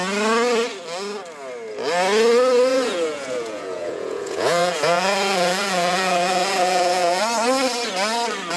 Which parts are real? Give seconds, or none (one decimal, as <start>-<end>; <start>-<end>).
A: 0.0-2.7; 7.2-8.6